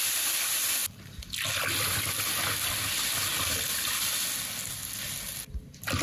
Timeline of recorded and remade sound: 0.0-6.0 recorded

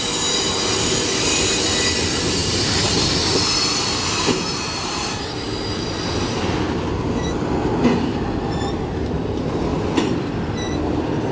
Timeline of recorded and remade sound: 0.0-9.7 recorded; 9.7-10.3 remade; 10.3-11.3 recorded

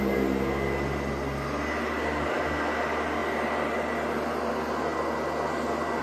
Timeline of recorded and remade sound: 0.0-6.0 recorded

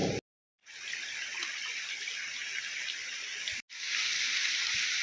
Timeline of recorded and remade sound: 0.0-0.9 recorded; 0.9-2.4 remade; 2.4-4.0 recorded; 4.0-5.0 remade

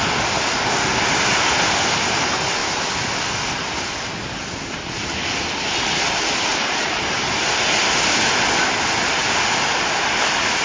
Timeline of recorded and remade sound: 0.0-6.5 recorded; 6.5-7.4 remade; 7.4-10.6 recorded